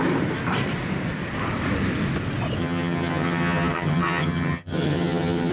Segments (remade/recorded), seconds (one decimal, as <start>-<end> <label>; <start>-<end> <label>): 0.0-2.6 recorded; 2.6-5.5 remade